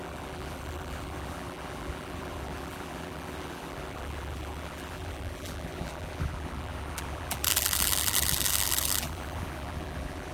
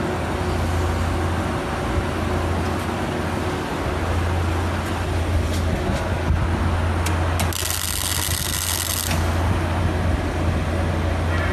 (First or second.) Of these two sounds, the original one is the second